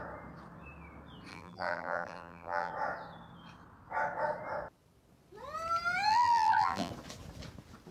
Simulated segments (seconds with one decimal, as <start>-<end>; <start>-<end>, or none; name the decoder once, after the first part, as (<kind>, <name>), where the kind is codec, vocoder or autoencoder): 1.3-2.7 (vocoder, BigVGAN v2); 6.1-6.9